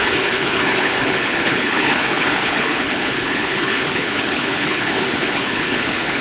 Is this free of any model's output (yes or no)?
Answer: no